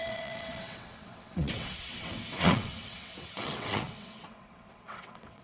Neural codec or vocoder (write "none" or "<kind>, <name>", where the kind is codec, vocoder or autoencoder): vocoder, WaveNeXt